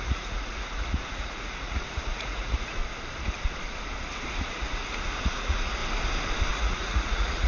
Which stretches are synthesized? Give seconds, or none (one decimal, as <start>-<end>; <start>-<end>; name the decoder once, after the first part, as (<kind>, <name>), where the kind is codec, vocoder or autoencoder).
0.0-2.8 (vocoder, Vocos); 4.3-5.8; 6.5-7.5